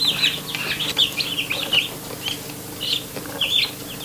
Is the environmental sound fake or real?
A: real